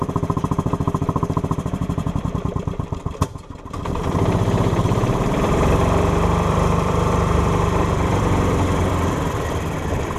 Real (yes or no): no